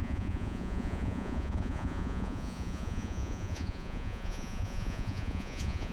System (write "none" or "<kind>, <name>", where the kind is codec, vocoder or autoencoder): vocoder, Vocos